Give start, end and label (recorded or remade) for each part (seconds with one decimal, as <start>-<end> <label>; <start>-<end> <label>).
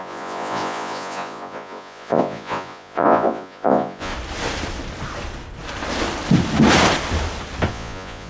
0.0-4.1 remade; 4.1-7.7 recorded; 7.7-8.3 remade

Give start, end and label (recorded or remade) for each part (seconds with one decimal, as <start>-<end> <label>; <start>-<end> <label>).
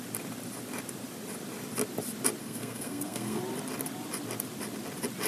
0.0-2.4 recorded; 2.4-3.4 remade; 3.4-5.3 recorded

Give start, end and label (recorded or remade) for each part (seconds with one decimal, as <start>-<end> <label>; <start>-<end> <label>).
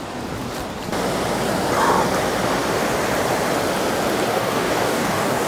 0.0-4.3 recorded; 4.3-5.5 remade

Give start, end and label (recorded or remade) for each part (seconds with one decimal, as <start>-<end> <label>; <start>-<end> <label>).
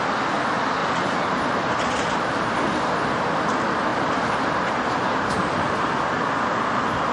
0.0-0.8 recorded; 0.8-2.5 remade; 2.5-3.9 recorded; 3.9-5.8 remade; 5.8-7.1 recorded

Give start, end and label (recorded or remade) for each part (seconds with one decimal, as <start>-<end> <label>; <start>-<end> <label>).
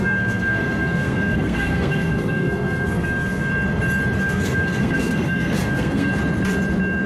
0.0-3.5 remade; 3.5-4.2 recorded; 4.2-6.1 remade; 6.1-7.1 recorded